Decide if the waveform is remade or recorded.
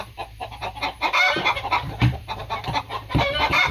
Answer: remade